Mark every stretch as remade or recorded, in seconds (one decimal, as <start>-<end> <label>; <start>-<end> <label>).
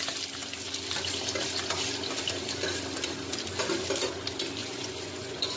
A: 0.0-4.6 recorded; 4.6-5.6 remade